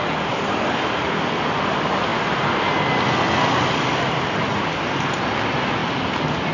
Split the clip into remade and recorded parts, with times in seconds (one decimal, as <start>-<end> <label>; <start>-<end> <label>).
0.0-5.8 recorded; 5.8-6.5 remade